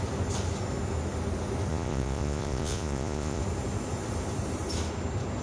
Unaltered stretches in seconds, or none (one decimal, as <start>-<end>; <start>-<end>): 0.0-1.7; 3.4-5.4